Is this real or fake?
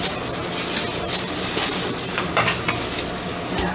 real